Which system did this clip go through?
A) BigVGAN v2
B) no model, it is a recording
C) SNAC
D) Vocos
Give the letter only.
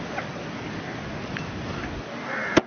B